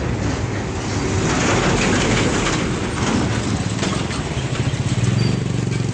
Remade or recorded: recorded